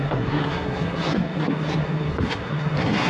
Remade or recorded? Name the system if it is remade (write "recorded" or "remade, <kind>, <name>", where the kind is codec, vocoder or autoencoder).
remade, codec, SNAC